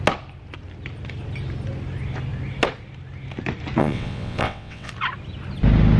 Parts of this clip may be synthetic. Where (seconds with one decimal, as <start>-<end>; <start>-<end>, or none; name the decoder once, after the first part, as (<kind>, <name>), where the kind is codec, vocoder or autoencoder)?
3.8-4.9 (vocoder, WaveNeXt)